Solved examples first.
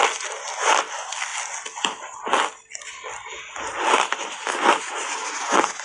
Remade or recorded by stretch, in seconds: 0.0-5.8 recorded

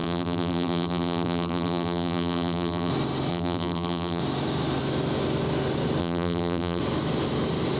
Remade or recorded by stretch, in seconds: 0.0-2.9 remade; 2.9-3.3 recorded; 3.3-4.2 remade; 4.2-6.0 recorded; 6.0-6.8 remade; 6.8-7.8 recorded